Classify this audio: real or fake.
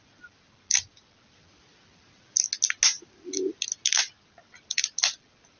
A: real